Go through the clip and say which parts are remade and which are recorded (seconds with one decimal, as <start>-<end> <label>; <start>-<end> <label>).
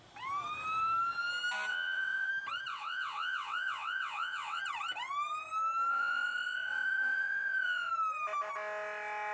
0.0-1.7 recorded; 1.7-2.3 remade; 2.3-2.7 recorded; 2.7-4.6 remade; 4.6-5.9 recorded; 5.9-7.9 remade; 7.9-9.3 recorded